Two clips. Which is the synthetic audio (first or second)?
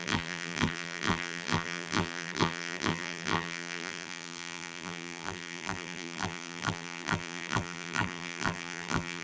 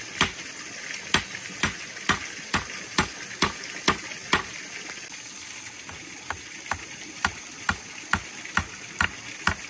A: first